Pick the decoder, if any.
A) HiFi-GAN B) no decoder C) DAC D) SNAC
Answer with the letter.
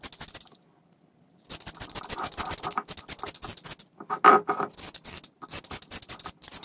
B